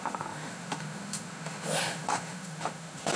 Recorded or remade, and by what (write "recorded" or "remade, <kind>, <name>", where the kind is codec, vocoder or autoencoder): remade, autoencoder, DAC-VAE